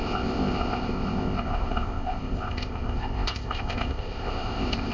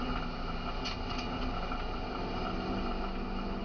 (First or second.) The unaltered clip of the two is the second